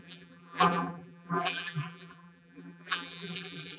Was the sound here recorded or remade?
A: remade